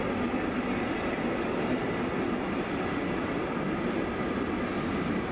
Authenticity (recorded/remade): recorded